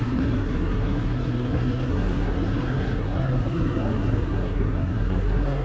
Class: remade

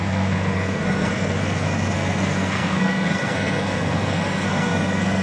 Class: remade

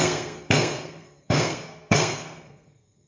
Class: remade